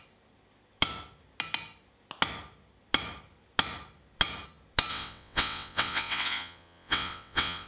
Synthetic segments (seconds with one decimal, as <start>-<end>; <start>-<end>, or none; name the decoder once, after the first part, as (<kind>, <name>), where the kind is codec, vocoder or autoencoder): 4.9-7.7 (vocoder, WaveNeXt)